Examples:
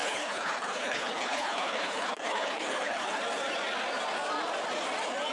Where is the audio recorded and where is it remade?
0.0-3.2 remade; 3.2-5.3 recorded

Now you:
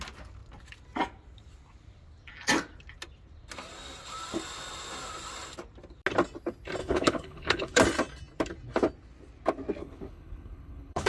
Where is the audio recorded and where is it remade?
0.0-6.8 recorded; 6.8-7.8 remade; 7.8-9.8 recorded; 9.8-11.1 remade